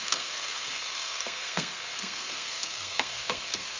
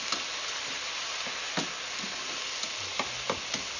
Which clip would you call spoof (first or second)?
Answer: first